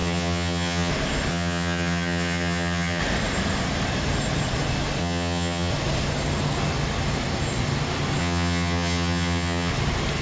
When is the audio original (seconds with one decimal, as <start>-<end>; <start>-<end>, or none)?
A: 0.9-1.3; 3.0-5.0; 5.7-8.2; 9.7-10.2